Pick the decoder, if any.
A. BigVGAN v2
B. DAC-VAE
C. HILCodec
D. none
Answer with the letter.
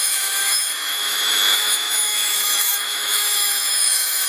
B